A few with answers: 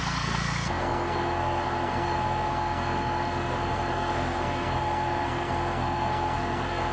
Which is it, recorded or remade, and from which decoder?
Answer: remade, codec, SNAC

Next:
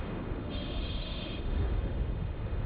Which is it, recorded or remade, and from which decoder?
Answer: remade, autoencoder, DAC-VAE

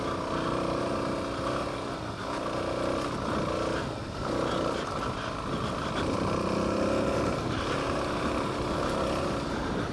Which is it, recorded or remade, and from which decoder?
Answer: recorded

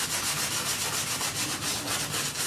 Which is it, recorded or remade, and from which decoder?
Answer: recorded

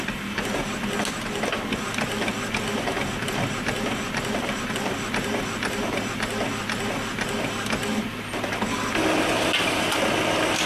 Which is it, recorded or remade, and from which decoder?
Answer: recorded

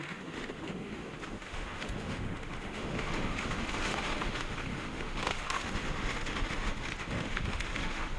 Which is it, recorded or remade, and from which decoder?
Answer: remade, autoencoder, DAC-VAE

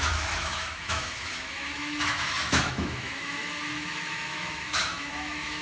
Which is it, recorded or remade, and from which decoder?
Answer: remade, autoencoder, DAC-VAE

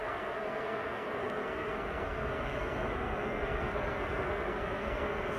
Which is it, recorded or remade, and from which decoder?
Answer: remade, codec, SNAC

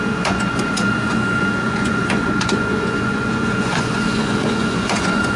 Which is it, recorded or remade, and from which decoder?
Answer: remade, vocoder, Vocos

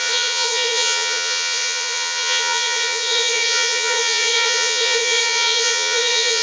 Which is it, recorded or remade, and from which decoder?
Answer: remade, vocoder, Vocos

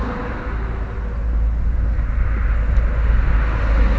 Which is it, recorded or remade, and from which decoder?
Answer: recorded